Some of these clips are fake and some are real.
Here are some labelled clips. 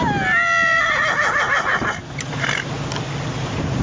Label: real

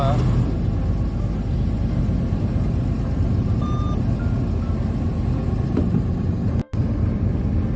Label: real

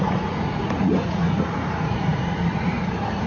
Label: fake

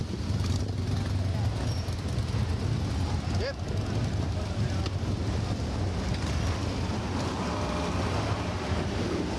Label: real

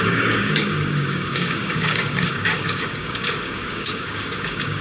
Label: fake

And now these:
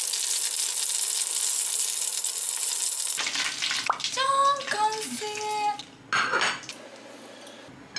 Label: real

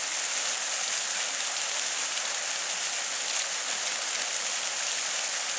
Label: real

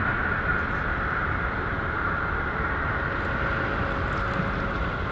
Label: real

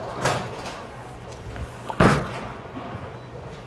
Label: fake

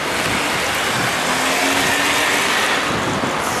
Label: real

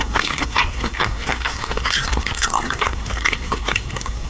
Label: fake